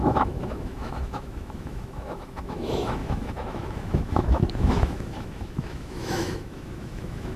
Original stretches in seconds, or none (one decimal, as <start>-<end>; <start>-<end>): none